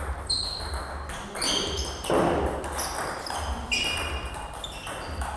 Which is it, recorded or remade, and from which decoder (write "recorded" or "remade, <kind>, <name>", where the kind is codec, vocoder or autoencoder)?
recorded